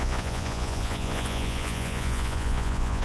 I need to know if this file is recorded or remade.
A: remade